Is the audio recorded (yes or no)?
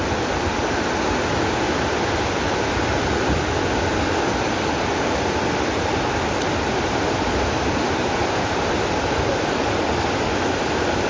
yes